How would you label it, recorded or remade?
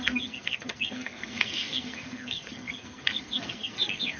remade